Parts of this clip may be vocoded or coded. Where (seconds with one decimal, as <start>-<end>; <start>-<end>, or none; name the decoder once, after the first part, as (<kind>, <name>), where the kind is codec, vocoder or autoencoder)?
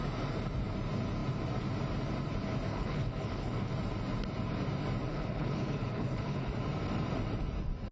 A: 2.7-3.7 (codec, HILCodec); 5.1-6.5